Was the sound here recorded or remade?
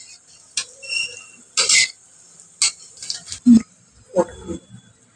recorded